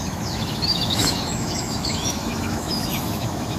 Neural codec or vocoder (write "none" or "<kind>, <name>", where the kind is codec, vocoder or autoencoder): autoencoder, DAC-VAE